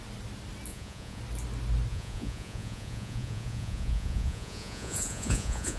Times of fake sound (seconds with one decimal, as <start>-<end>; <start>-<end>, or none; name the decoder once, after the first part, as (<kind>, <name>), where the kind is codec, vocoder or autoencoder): 0.7-1.2 (vocoder, Vocos); 1.9-5.8